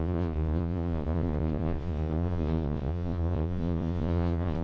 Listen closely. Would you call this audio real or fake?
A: fake